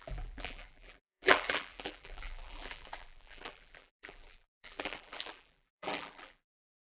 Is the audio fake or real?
fake